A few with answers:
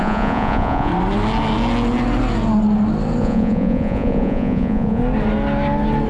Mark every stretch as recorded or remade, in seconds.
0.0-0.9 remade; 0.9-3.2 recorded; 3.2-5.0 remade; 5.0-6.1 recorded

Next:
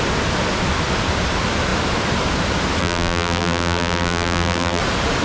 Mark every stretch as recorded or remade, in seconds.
0.0-2.8 recorded; 2.8-4.8 remade; 4.8-5.2 recorded

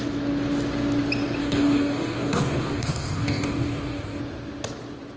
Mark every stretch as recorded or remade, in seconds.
0.0-1.4 recorded; 1.4-4.2 remade; 4.2-5.2 recorded

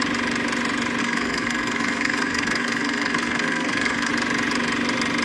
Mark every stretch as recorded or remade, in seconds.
0.0-1.0 recorded; 1.0-4.1 remade; 4.1-5.2 recorded

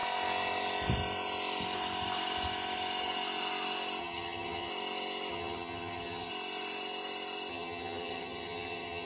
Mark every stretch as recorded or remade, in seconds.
0.0-4.0 recorded; 4.0-4.7 remade; 4.7-5.3 recorded; 5.3-6.3 remade; 6.3-7.5 recorded; 7.5-9.1 remade

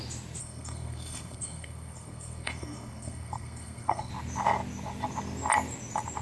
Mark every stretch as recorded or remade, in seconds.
0.0-0.4 recorded; 0.4-4.1 remade; 4.1-6.2 recorded

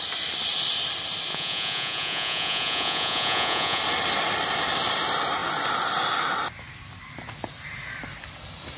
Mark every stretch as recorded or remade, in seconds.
0.0-1.3 recorded; 1.3-3.8 remade; 3.8-8.8 recorded